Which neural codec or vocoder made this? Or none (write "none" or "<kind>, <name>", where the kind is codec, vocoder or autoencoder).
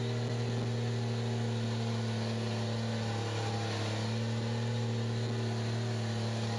none